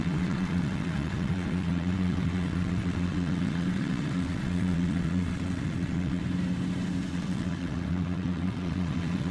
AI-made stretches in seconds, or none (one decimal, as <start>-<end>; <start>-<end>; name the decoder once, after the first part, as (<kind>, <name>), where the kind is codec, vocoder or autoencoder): 0.0-6.2 (vocoder, WaveNeXt); 7.1-9.3